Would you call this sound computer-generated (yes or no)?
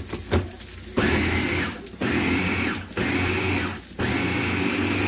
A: no